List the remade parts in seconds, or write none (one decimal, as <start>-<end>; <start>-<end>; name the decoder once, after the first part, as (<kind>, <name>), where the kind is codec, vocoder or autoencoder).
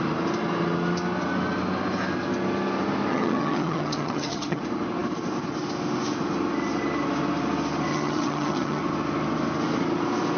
3.1-4.6 (vocoder, HiFi-GAN); 7.9-8.8